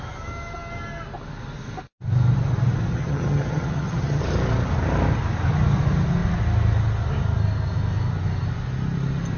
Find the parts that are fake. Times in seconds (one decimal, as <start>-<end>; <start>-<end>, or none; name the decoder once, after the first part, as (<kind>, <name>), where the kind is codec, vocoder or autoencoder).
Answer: 2.9-4.2 (vocoder, HiFi-GAN)